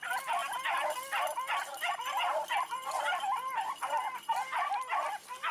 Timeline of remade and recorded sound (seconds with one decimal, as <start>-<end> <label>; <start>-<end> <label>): 0.0-5.5 recorded